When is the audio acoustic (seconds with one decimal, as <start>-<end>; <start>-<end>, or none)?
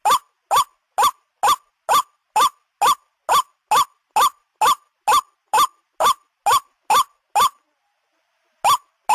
0.0-9.1